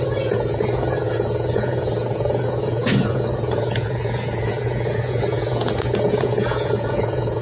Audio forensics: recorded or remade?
remade